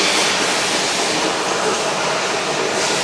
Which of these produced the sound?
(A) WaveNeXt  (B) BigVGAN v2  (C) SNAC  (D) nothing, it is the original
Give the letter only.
D